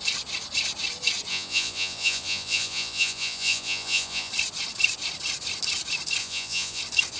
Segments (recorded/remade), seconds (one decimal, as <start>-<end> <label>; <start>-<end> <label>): 0.0-1.3 recorded; 1.3-4.3 remade; 4.3-6.2 recorded; 6.2-6.8 remade; 6.8-7.2 recorded